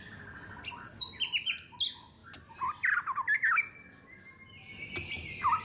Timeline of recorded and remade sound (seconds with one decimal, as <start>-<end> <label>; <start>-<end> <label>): 0.0-5.6 recorded